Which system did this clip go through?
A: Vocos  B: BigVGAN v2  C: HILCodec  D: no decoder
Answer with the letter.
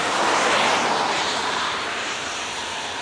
B